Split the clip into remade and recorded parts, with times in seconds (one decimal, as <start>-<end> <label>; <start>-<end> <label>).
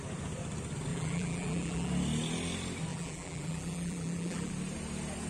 0.0-0.9 recorded; 0.9-1.9 remade; 1.9-2.9 recorded; 2.9-4.5 remade; 4.5-5.3 recorded